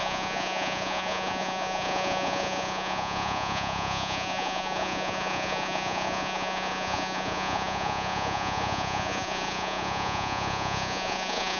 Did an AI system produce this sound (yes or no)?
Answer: yes